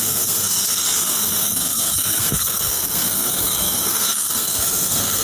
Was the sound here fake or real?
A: fake